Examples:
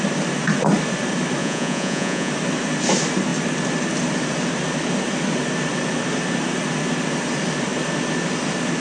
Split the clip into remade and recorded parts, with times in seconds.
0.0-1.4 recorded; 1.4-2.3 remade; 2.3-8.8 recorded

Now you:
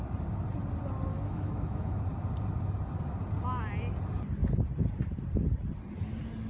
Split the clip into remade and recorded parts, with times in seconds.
0.0-1.1 recorded; 1.1-2.0 remade; 2.0-6.5 recorded

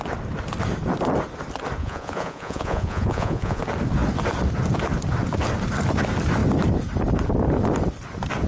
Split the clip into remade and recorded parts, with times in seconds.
0.0-1.8 recorded; 1.8-3.6 remade; 3.6-8.5 recorded